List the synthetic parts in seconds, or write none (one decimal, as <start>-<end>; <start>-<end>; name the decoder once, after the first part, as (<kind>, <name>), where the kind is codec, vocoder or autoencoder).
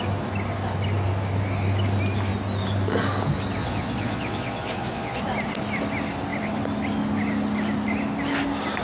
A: 3.6-5.2 (vocoder, Vocos)